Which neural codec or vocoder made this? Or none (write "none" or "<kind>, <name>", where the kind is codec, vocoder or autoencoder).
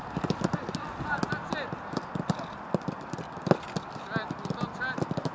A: none